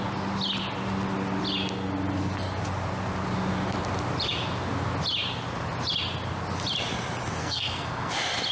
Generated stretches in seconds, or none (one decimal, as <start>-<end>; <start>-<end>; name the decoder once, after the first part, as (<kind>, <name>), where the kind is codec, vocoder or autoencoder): 7.4-8.1 (codec, SNAC)